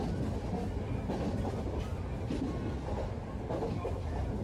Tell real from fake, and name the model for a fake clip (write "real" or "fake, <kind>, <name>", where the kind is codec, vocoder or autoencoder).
real